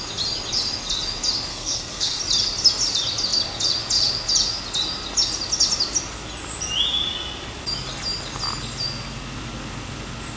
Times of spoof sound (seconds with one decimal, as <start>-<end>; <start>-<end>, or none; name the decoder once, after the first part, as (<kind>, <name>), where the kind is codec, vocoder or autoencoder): 1.5-2.2 (codec, SNAC)